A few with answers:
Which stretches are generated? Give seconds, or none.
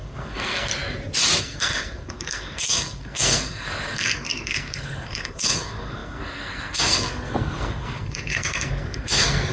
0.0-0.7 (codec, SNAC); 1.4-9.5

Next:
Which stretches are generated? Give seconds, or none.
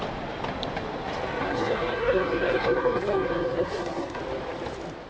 1.4-4.2 (codec, SNAC)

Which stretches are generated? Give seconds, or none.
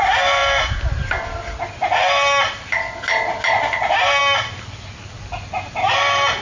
none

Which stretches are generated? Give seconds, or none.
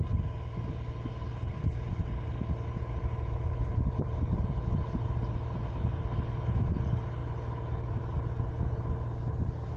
none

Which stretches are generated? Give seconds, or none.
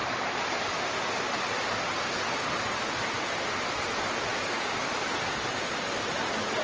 4.3-4.8 (codec, DAC)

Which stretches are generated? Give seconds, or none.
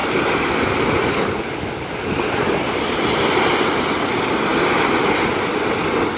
0.0-0.5 (vocoder, BigVGAN v2)